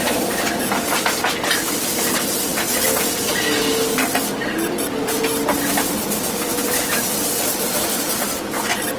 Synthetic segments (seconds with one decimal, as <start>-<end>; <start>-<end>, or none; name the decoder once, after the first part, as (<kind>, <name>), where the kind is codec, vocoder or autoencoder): 7.5-8.2 (vocoder, BigVGAN v2)